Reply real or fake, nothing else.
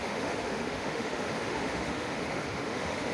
fake